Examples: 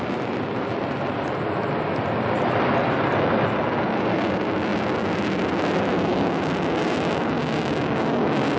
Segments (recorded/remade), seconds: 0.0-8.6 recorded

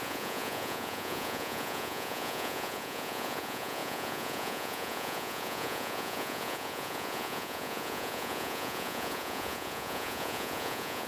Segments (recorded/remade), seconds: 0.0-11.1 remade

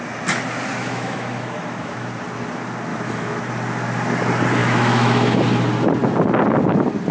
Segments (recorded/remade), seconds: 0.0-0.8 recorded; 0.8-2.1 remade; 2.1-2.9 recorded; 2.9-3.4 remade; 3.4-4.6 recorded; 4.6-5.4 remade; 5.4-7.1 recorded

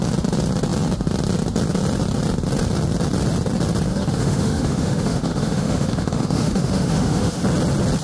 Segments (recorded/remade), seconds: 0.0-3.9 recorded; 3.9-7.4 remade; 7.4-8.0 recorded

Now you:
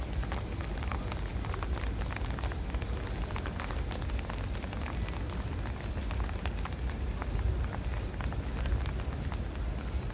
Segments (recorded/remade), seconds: 0.0-10.1 recorded

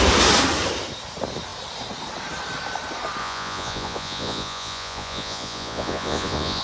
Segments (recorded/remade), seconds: 0.0-3.2 recorded; 3.2-6.6 remade